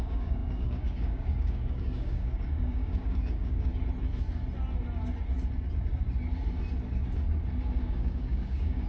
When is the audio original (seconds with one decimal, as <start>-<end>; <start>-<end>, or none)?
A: 3.7-7.8